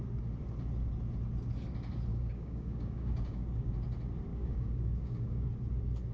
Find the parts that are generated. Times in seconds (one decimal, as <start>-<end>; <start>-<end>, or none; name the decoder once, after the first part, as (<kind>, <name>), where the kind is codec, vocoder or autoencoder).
2.1-3.7 (codec, DAC); 4.3-5.5